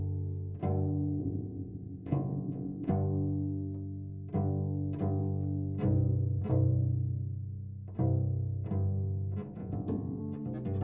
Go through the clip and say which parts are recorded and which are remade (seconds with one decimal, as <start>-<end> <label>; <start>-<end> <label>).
0.0-1.2 recorded; 1.2-2.9 remade; 2.9-9.6 recorded; 9.6-10.2 remade; 10.2-10.8 recorded